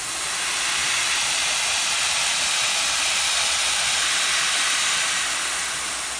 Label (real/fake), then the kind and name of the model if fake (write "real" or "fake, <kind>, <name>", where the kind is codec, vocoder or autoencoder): real